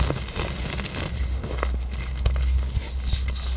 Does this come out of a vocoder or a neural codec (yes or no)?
no